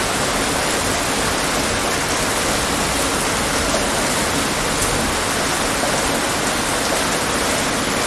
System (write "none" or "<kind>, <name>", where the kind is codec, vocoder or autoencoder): none